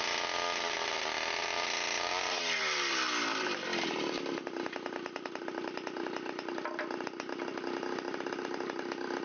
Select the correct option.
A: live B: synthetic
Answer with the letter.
A